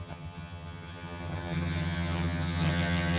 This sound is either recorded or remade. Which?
remade